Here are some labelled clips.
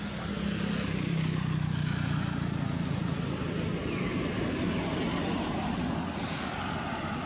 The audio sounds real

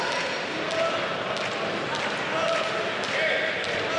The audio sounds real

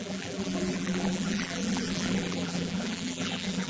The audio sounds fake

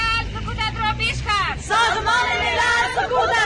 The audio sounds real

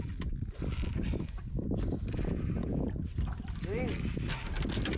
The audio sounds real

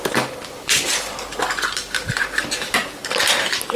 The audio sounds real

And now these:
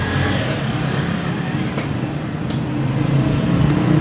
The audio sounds real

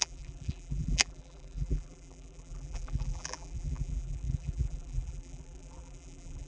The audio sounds fake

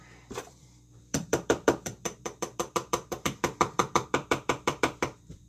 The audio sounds fake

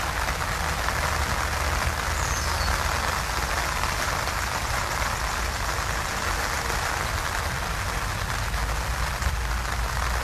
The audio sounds real